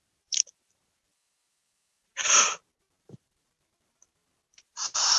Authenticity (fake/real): fake